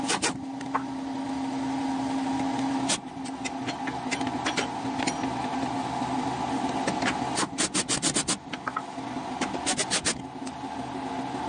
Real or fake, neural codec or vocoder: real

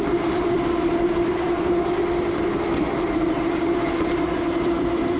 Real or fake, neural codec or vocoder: fake, vocoder, BigVGAN v2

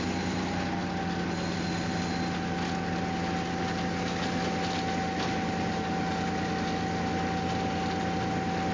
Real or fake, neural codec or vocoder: real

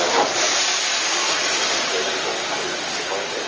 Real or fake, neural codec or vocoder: real